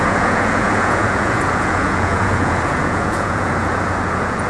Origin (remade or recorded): remade